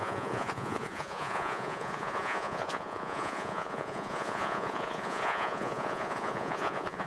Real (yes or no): no